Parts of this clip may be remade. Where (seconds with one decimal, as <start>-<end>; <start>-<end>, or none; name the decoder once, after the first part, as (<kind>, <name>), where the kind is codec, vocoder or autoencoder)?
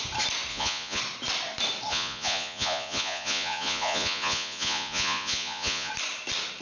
0.5-1.0 (vocoder, Vocos); 1.9-5.9